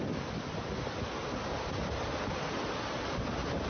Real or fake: real